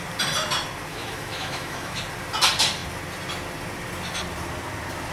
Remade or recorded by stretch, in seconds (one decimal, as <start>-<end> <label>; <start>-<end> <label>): 0.0-0.9 recorded; 0.9-2.0 remade; 2.0-5.1 recorded

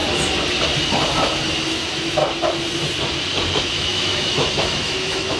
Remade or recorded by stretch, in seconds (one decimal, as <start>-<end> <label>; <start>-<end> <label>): 0.0-1.7 recorded; 1.7-2.2 remade; 2.2-3.6 recorded; 3.6-5.4 remade

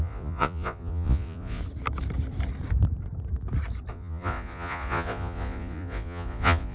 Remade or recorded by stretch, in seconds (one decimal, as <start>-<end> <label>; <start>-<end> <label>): 0.0-1.6 remade; 1.6-3.9 recorded; 3.9-6.7 remade